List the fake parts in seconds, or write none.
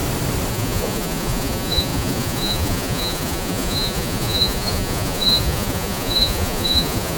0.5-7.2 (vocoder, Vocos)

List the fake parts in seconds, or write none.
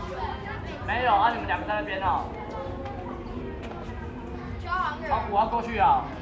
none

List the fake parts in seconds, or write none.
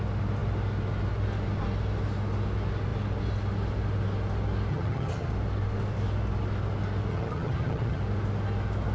4.7-5.3 (vocoder, HiFi-GAN); 7.1-8.0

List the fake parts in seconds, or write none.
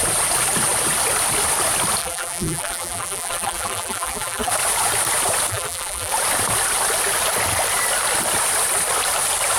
2.0-4.5 (vocoder, BigVGAN v2); 5.5-6.1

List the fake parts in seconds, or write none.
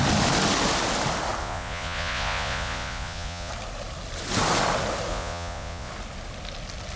1.4-3.5 (vocoder, Vocos); 5.1-5.9